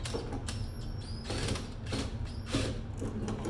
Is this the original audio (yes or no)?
yes